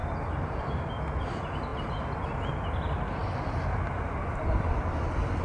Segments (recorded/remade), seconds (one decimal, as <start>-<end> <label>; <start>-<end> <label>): 0.0-5.4 recorded